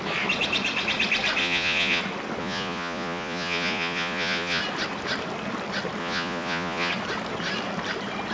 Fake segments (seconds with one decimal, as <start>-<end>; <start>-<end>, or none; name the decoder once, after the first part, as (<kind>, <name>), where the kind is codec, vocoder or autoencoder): 1.4-2.0 (vocoder, Vocos); 2.4-4.6; 6.0-6.9